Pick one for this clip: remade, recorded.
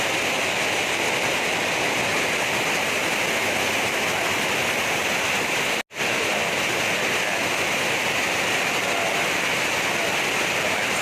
recorded